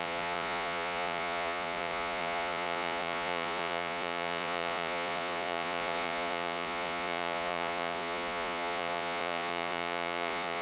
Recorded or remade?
remade